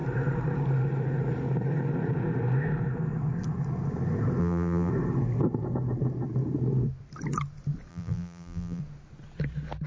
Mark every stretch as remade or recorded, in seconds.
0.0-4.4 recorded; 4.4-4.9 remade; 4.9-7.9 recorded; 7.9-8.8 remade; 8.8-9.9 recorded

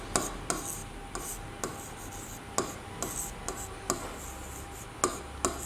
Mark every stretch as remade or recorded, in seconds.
0.0-5.7 recorded

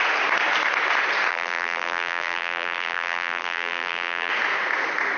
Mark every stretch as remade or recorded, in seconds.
0.0-1.3 recorded; 1.3-4.3 remade; 4.3-5.2 recorded

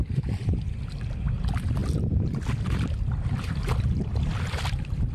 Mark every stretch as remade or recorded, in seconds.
0.0-1.8 recorded; 1.8-5.1 remade

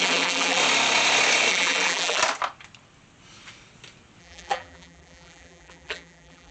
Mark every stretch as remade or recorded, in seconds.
0.0-0.6 remade; 0.6-1.5 recorded; 1.5-2.2 remade; 2.2-4.2 recorded; 4.2-6.5 remade

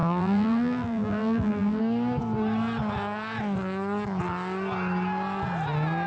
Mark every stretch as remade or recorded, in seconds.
0.0-1.8 remade; 1.8-6.1 recorded